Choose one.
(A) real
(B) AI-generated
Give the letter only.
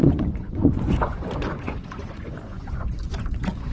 B